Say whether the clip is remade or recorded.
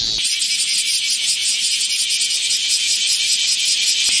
recorded